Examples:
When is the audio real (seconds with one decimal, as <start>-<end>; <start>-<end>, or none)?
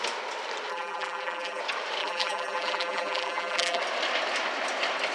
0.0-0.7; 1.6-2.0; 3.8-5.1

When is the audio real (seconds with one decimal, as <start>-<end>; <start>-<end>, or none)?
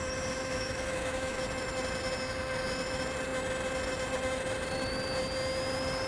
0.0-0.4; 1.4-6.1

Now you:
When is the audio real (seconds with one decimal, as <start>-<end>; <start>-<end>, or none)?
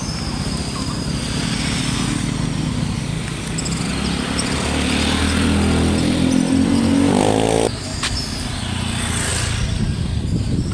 0.0-10.7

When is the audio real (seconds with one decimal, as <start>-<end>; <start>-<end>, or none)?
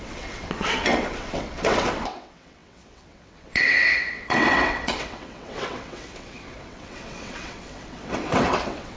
none